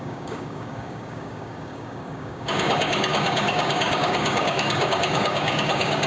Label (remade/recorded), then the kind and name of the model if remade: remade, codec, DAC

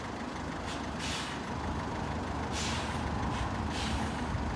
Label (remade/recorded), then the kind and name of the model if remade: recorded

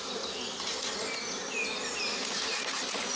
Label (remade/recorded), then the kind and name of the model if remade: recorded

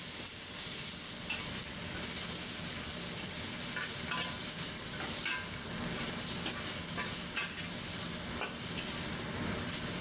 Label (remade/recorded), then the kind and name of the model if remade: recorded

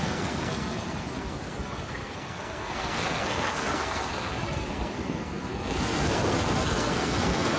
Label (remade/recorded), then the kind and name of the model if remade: remade, codec, SNAC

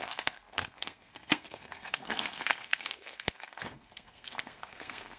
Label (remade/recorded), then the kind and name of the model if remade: remade, codec, SNAC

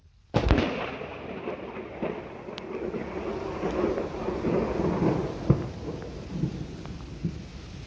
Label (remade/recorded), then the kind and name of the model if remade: recorded